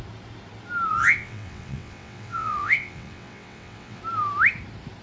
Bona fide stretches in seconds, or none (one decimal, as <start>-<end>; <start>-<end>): 0.0-1.0; 4.0-5.0